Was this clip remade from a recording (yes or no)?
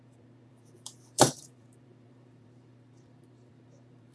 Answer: yes